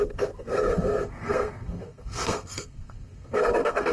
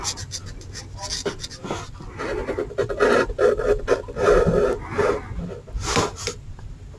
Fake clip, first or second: first